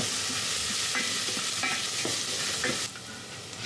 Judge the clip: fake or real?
real